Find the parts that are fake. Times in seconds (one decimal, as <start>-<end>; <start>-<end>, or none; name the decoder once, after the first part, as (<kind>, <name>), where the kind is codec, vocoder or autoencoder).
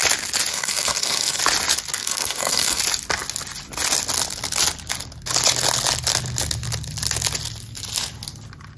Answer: 0.5-1.4 (codec, SNAC); 2.0-2.8